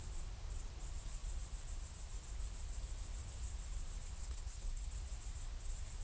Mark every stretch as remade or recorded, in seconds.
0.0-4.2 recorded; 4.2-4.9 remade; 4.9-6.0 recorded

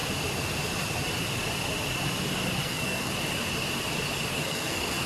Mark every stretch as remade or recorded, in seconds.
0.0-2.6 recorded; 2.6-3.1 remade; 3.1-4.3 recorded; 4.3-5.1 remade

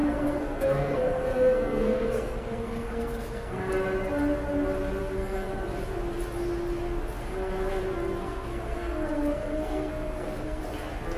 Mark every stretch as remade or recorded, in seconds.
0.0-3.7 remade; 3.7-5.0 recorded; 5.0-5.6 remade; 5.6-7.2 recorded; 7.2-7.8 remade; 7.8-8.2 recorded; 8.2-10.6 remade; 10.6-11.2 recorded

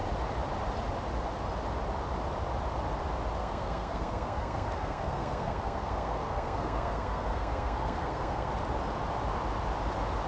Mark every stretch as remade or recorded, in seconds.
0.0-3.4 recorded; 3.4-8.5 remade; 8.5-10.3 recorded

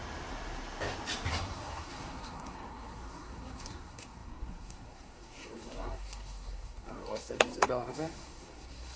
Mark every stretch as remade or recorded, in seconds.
0.0-1.3 recorded; 1.3-9.0 remade

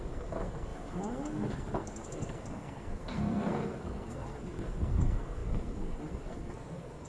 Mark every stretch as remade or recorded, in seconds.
0.0-7.1 remade

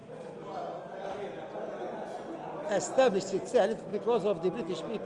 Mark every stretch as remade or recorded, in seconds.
0.0-5.1 recorded